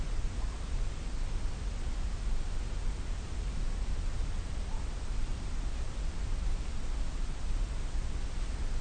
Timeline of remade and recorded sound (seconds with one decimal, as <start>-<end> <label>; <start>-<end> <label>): 0.0-8.8 recorded